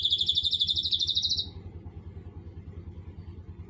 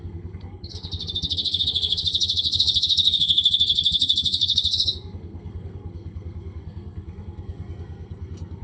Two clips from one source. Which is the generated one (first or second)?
second